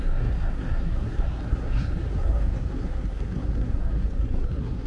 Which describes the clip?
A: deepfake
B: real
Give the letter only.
A